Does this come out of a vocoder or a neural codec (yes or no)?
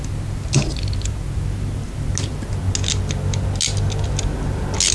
no